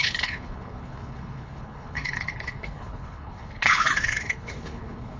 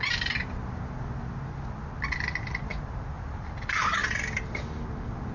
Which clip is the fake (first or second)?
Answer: first